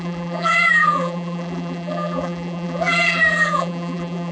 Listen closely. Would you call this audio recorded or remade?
remade